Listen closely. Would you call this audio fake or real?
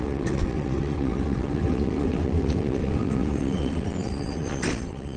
fake